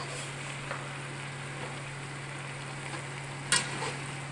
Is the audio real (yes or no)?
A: yes